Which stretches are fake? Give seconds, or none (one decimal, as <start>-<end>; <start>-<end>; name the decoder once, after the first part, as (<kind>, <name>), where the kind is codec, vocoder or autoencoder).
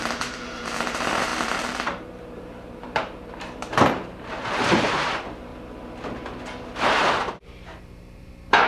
0.0-5.5 (vocoder, BigVGAN v2); 7.0-8.7